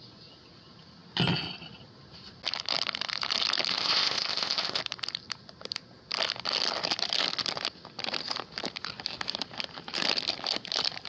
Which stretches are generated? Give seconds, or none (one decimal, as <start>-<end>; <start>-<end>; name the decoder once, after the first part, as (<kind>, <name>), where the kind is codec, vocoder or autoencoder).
3.7-4.8 (codec, ZipCodec)